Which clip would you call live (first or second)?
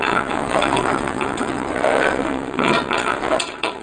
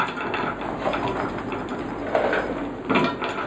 second